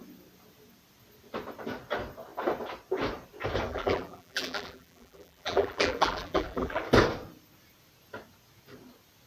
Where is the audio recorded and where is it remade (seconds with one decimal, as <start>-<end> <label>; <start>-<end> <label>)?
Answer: 0.0-3.7 recorded; 3.7-6.8 remade; 6.8-9.3 recorded